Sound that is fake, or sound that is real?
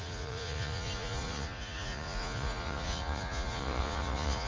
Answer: fake